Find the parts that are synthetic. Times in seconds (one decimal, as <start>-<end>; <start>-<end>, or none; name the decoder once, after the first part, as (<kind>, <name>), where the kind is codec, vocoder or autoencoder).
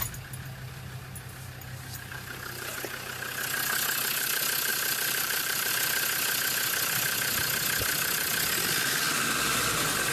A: 4.7-5.7 (vocoder, BigVGAN v2)